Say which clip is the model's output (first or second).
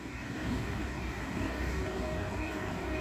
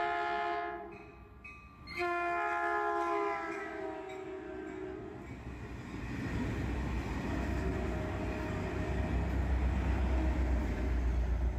first